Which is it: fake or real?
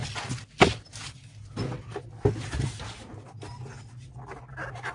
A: real